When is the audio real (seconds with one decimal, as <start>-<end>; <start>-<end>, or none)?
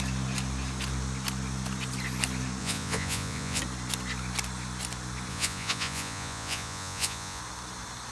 0.0-2.6; 3.6-5.3; 7.4-8.1